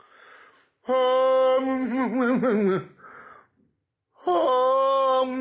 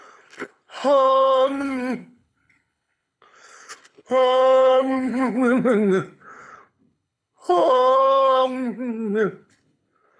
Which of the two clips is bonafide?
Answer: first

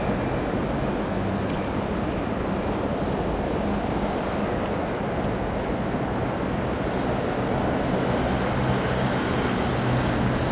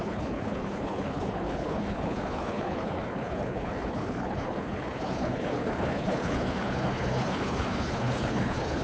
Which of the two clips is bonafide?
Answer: first